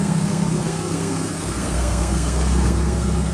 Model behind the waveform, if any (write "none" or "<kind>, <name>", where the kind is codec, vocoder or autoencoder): codec, SNAC